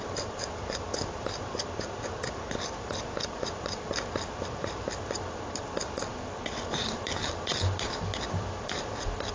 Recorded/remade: remade